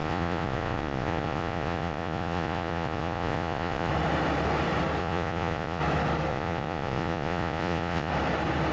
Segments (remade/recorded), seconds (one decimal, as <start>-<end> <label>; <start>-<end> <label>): 0.0-3.9 remade; 3.9-5.0 recorded; 5.0-5.8 remade; 5.8-6.3 recorded; 6.3-8.1 remade; 8.1-8.7 recorded